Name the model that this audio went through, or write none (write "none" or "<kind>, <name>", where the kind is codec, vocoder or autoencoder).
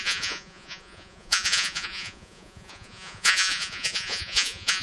vocoder, Vocos